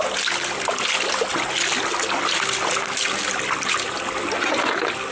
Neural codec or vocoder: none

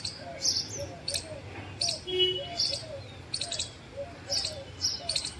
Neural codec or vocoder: none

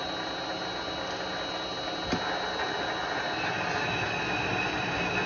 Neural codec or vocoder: none